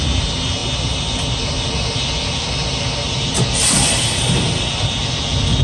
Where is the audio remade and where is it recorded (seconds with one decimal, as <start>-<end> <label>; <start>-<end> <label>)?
0.0-5.6 recorded